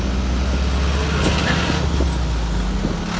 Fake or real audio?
real